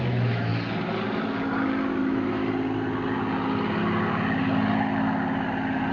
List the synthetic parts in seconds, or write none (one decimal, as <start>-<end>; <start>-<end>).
0.0-0.5; 2.0-2.4